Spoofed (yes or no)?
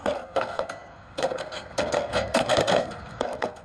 yes